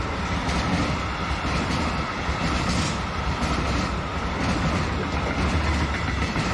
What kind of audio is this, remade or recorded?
recorded